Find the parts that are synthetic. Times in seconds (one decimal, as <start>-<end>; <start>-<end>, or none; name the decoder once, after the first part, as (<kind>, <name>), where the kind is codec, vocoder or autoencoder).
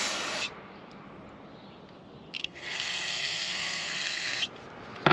2.4-4.4 (codec, SNAC)